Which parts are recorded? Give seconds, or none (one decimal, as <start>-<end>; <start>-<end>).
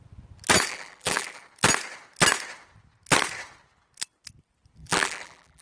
0.0-0.7; 1.4-4.8